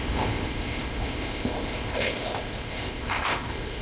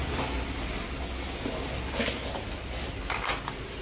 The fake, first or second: first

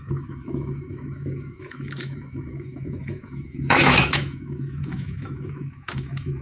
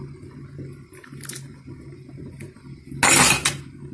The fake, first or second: first